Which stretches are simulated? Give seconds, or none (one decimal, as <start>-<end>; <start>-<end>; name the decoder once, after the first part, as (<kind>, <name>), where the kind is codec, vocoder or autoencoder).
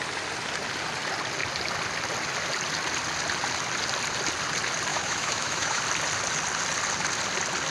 4.9-5.8 (autoencoder, DAC-VAE)